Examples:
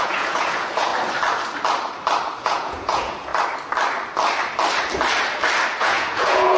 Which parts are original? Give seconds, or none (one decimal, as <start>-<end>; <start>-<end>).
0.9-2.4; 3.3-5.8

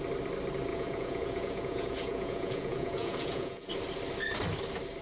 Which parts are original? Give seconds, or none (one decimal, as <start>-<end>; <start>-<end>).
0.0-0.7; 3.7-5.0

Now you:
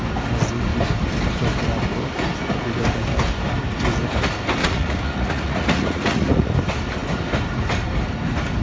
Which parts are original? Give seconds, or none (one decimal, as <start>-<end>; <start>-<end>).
0.0-4.6; 6.5-8.6

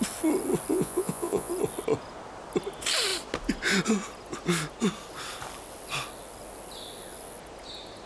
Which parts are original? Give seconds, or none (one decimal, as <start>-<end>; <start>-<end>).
0.0-0.7; 1.5-8.1